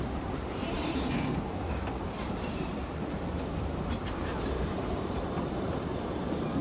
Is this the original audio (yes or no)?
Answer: no